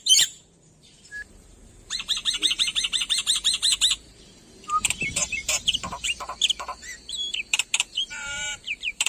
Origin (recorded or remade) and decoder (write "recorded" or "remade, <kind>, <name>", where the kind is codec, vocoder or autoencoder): remade, vocoder, BigVGAN v2